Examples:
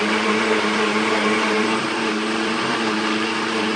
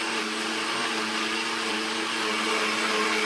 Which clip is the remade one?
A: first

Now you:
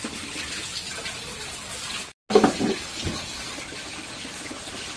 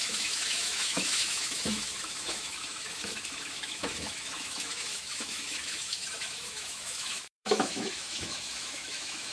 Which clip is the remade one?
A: second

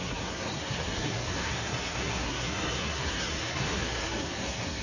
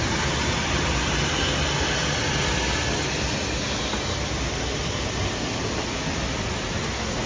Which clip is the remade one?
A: first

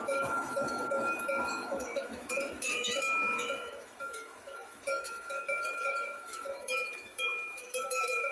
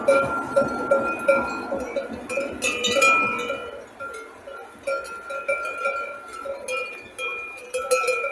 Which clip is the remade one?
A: first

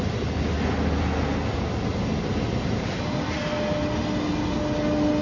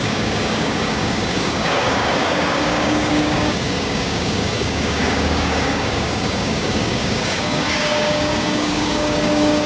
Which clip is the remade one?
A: second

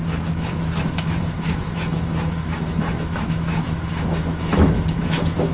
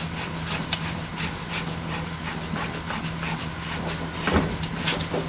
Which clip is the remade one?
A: first